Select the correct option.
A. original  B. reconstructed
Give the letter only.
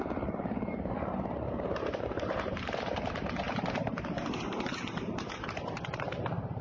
B